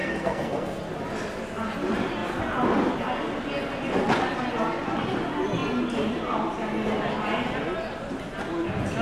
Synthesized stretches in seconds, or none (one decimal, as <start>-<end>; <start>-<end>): 0.0-0.8